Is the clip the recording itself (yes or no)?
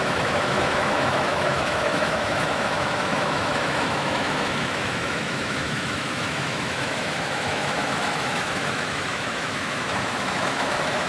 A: no